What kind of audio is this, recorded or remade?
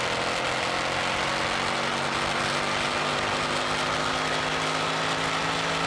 recorded